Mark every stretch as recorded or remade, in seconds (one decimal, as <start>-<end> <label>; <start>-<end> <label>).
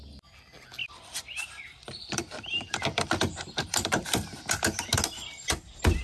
0.0-0.8 recorded; 0.8-4.4 remade; 4.4-6.0 recorded